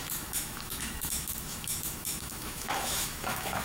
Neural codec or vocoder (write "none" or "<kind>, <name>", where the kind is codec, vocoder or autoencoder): autoencoder, DAC-VAE